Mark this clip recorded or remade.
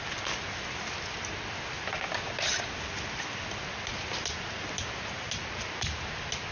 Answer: recorded